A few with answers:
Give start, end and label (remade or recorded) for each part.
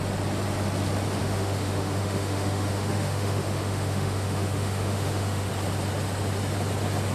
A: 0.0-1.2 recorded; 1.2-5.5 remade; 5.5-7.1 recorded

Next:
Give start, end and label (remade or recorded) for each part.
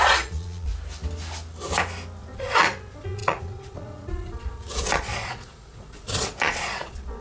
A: 0.0-0.7 remade; 0.7-2.2 recorded; 2.2-7.2 remade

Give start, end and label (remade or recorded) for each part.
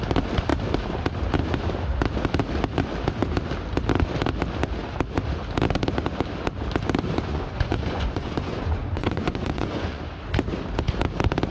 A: 0.0-7.3 recorded; 7.3-10.0 remade; 10.0-11.5 recorded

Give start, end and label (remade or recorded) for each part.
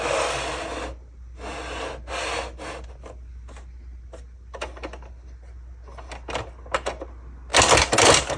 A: 0.0-8.4 recorded